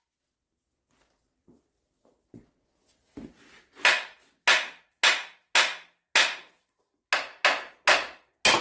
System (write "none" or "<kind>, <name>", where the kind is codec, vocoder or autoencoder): none